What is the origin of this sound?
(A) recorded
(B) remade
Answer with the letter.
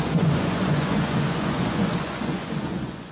B